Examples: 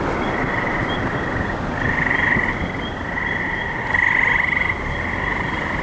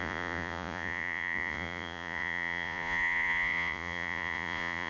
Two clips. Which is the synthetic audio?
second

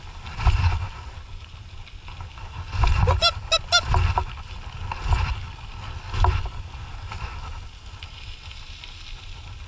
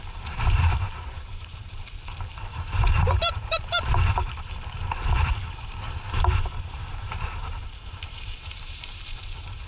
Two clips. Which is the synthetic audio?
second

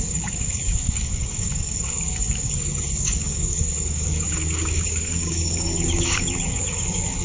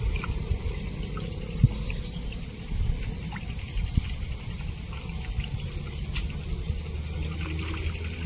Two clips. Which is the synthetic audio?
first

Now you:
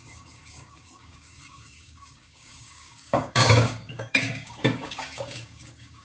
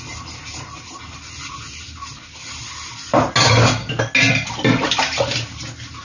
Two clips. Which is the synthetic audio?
first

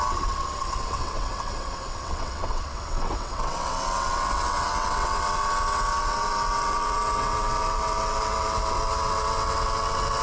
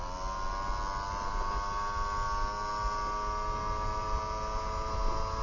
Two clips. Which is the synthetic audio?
first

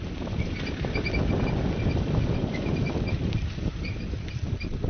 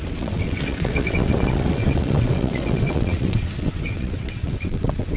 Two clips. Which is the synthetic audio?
second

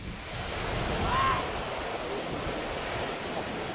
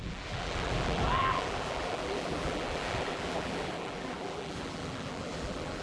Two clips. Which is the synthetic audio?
second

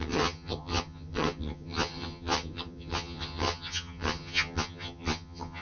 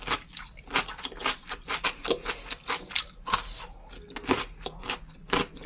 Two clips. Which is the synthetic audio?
first